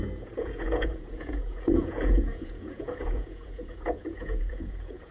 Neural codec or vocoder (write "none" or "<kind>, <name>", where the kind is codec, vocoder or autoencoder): vocoder, Vocos